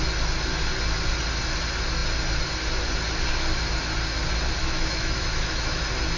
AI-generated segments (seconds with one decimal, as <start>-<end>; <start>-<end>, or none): 4.6-5.8